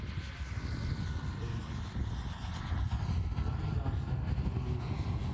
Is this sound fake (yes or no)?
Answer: no